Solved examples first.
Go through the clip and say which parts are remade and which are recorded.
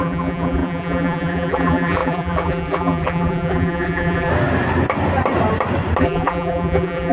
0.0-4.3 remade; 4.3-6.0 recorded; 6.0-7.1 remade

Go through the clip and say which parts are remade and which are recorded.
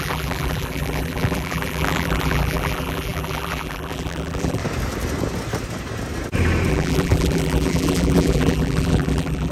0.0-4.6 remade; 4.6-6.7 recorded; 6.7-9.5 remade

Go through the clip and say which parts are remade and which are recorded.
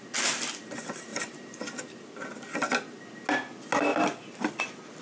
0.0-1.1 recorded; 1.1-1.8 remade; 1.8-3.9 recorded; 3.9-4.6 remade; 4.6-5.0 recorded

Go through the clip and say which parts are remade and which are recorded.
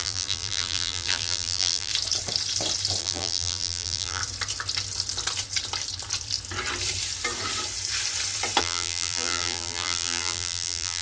0.0-1.9 remade; 1.9-3.0 recorded; 3.0-4.2 remade; 4.2-8.6 recorded; 8.6-11.0 remade